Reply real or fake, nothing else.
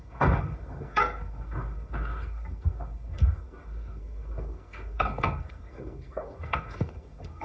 fake